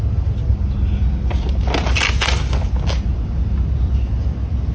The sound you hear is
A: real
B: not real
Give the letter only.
A